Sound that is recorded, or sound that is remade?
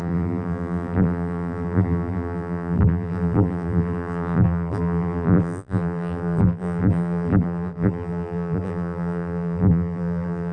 remade